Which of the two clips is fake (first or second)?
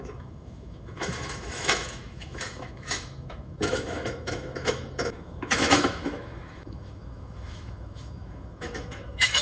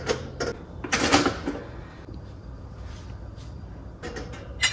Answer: first